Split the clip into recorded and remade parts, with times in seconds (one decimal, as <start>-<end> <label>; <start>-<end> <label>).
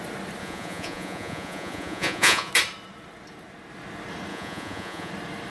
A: 0.0-0.4 recorded; 0.4-2.5 remade; 2.5-4.3 recorded; 4.3-5.1 remade; 5.1-5.5 recorded